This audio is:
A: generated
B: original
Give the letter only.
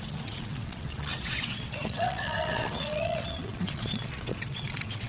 A